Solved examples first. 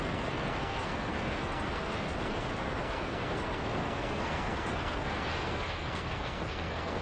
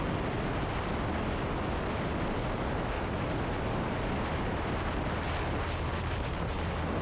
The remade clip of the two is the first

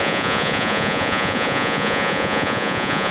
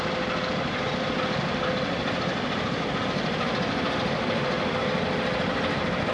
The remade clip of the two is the first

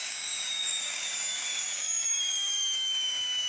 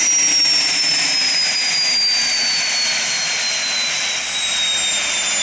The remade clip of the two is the first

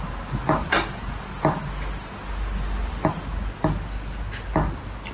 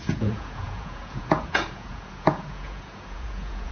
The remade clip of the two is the second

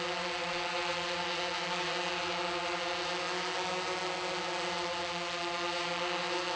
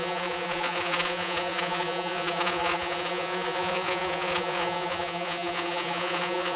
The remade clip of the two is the second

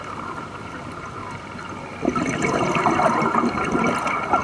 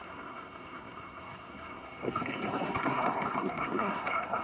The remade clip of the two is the second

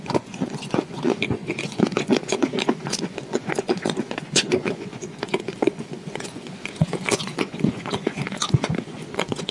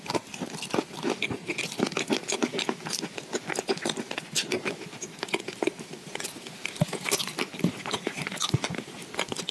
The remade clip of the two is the first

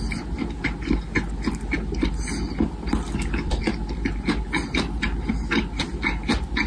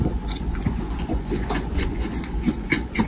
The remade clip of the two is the second